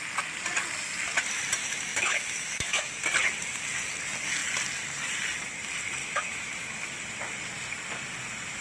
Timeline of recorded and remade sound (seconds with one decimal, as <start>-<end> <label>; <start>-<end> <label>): 0.0-1.6 recorded; 1.6-2.9 remade; 2.9-6.0 recorded; 6.0-7.0 remade; 7.0-8.6 recorded